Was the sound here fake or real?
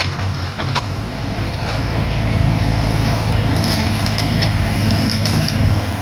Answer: fake